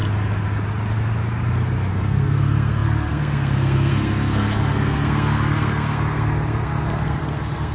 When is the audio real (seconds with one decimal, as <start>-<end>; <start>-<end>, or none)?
0.0-1.9